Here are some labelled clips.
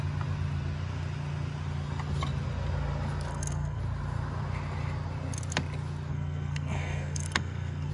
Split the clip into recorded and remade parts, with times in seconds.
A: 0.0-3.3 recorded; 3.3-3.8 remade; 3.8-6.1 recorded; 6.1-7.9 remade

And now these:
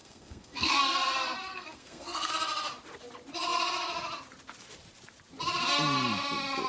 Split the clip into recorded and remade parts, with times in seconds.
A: 0.0-0.8 remade; 0.8-1.5 recorded; 1.5-2.3 remade; 2.3-6.7 recorded

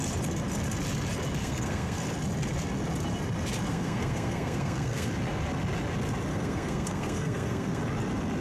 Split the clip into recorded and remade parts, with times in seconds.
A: 0.0-1.4 recorded; 1.4-2.0 remade; 2.0-3.7 recorded; 3.7-5.1 remade; 5.1-6.3 recorded; 6.3-7.8 remade; 7.8-8.4 recorded